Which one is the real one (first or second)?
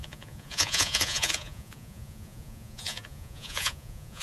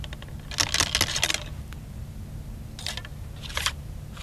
second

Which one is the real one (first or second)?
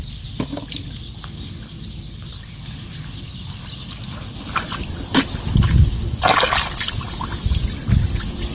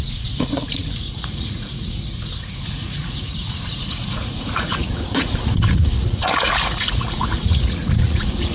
first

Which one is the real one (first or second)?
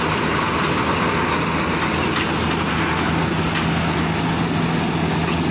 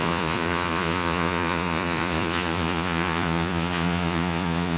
first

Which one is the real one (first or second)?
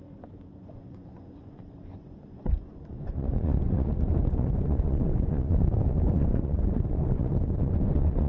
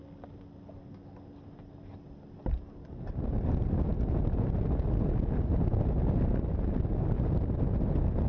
second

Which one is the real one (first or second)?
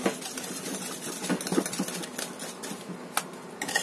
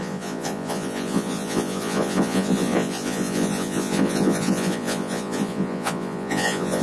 first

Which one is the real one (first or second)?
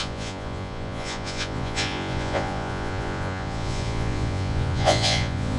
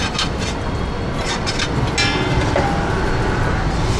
second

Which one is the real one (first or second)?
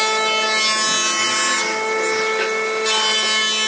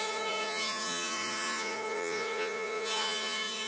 first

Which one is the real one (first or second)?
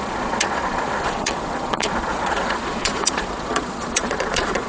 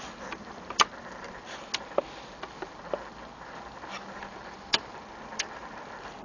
second